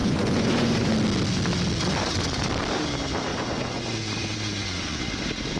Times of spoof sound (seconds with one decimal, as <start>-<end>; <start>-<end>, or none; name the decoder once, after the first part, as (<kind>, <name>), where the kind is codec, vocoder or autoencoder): 0.0-0.9 (vocoder, Vocos); 3.3-5.0